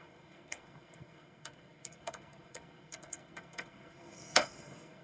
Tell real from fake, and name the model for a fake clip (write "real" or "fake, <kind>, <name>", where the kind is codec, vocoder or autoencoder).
fake, codec, SNAC